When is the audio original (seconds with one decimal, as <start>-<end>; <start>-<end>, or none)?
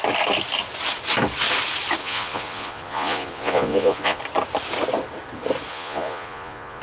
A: 0.0-2.0; 4.2-5.7